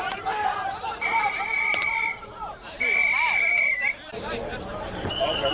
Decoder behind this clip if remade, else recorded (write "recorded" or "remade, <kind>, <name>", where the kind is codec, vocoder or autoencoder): remade, vocoder, BigVGAN v2